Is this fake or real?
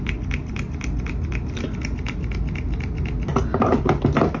real